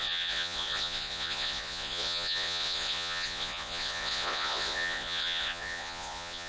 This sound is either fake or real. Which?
fake